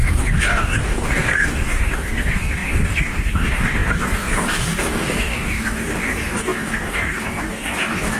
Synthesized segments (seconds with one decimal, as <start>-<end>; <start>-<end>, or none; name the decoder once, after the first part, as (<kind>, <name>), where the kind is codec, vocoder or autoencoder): 0.0-8.2 (codec, DAC)